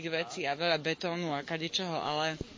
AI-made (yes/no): yes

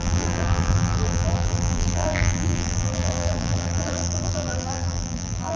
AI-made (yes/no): yes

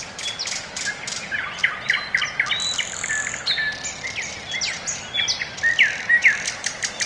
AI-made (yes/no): no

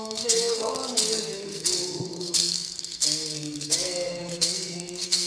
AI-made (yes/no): yes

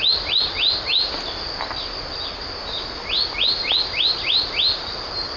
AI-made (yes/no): no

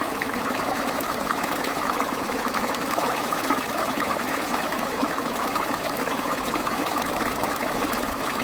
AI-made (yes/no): yes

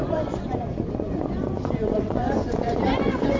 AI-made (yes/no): yes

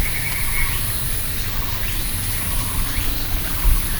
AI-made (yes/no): no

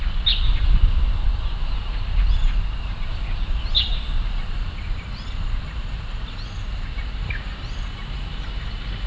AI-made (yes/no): no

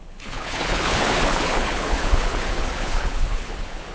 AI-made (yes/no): yes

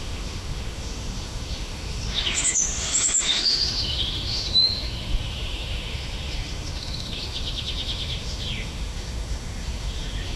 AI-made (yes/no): yes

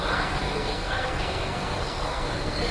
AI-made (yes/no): yes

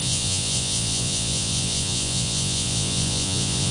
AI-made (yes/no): yes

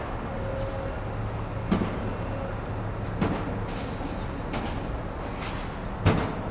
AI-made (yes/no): no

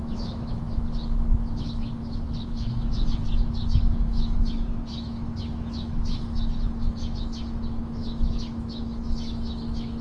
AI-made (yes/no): yes